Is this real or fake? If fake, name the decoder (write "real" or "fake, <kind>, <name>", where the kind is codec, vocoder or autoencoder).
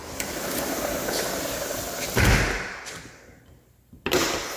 real